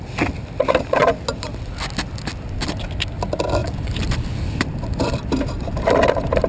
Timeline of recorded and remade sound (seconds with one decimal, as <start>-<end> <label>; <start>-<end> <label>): 0.0-3.6 recorded; 3.6-6.0 remade; 6.0-6.5 recorded